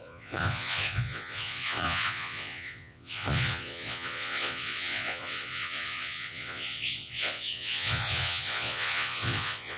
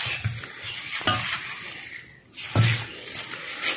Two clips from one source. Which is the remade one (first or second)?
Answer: first